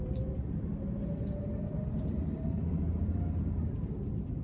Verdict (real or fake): fake